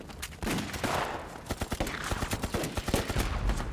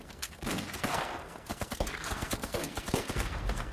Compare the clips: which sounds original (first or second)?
first